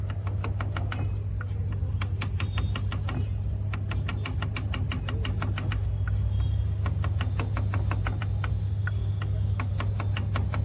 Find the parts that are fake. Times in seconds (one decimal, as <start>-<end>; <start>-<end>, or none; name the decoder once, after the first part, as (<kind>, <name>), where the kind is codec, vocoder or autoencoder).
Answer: 9.0-9.7 (codec, DAC)